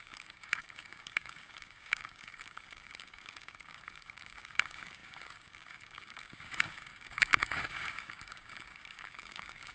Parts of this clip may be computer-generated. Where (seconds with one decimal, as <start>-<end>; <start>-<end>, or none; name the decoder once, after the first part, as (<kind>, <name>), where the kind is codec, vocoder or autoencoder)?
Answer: 0.0-9.7 (codec, DAC)